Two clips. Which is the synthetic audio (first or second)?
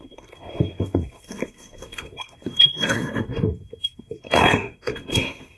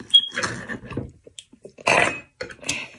first